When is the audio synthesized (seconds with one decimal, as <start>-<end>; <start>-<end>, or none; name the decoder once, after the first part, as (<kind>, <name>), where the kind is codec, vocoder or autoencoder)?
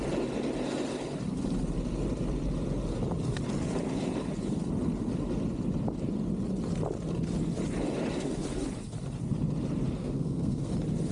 10.0-10.7 (codec, SNAC)